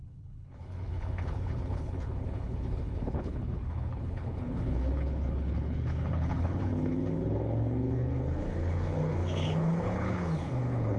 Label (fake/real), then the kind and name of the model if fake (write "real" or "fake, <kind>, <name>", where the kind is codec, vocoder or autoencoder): fake, codec, HILCodec